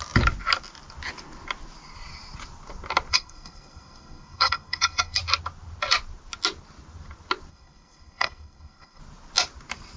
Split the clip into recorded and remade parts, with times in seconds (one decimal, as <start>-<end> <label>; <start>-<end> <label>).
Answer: 0.0-3.1 recorded; 3.1-5.2 remade; 5.2-7.5 recorded; 7.5-9.0 remade; 9.0-10.0 recorded